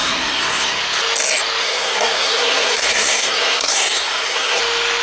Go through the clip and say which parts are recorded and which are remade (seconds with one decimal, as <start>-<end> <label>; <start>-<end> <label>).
0.0-0.8 remade; 0.8-1.6 recorded; 1.6-4.6 remade; 4.6-5.0 recorded